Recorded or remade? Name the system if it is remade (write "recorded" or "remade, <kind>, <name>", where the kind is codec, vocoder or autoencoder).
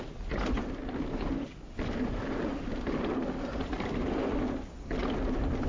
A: recorded